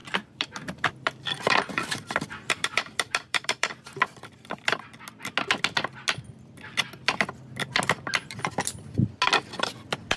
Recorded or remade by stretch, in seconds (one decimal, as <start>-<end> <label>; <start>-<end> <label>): 0.0-4.5 remade; 4.5-10.2 recorded